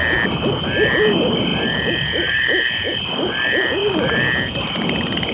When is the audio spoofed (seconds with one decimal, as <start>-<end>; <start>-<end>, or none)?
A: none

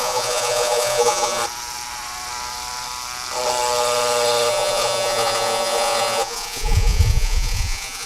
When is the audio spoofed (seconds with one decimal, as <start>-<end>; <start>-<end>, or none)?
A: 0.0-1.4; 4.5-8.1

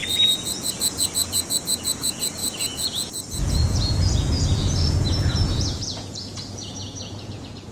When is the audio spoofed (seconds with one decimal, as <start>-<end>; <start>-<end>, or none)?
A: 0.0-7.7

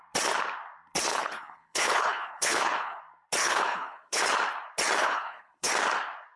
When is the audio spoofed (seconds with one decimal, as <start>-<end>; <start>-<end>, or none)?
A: 1.1-3.0; 3.4-4.2; 5.0-5.7

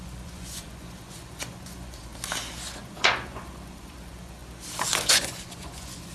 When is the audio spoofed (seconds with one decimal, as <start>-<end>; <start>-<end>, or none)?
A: 0.0-2.1; 2.7-4.4; 5.0-6.1

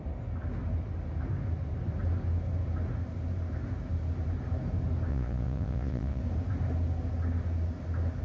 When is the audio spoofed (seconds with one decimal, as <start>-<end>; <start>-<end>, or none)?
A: 5.1-6.2

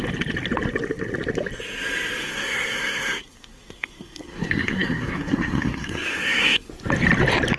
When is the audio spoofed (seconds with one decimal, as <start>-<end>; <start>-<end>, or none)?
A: 2.2-6.7

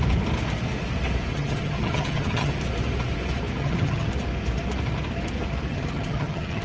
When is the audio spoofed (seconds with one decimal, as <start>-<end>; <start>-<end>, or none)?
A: 1.3-2.5; 3.6-4.1; 5.7-6.6